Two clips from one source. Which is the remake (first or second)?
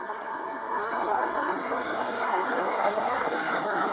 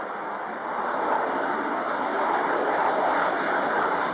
first